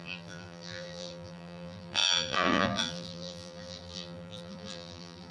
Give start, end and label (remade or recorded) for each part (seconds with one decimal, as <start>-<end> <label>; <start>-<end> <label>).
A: 0.0-5.3 remade